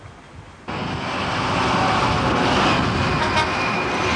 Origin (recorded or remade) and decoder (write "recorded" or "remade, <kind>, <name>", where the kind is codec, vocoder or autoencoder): recorded